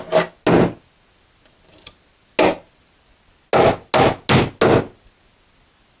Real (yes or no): yes